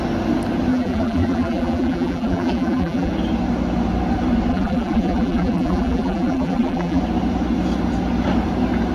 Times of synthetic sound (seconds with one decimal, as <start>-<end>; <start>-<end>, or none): 0.7-3.1; 4.5-7.0